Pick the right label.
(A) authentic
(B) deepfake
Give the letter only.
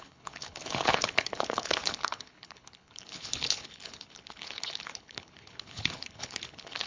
B